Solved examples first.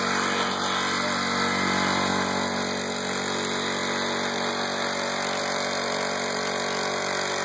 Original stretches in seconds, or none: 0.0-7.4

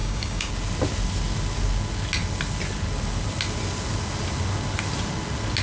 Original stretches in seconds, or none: 0.5-5.6

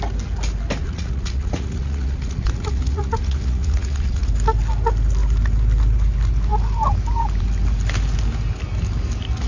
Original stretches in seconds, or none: 0.0-0.8; 4.3-9.5

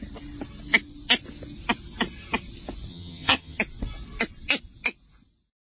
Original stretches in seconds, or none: 0.0-2.9; 3.6-5.7

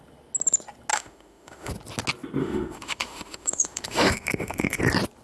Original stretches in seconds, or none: 0.0-0.9; 1.7-2.4; 4.8-5.2

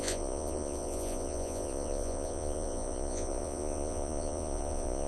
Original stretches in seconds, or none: none